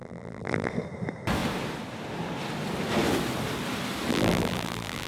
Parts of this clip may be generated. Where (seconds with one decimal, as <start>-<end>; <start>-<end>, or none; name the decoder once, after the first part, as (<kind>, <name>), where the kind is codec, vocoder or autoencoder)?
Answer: 0.0-0.7 (vocoder, BigVGAN v2); 4.1-5.1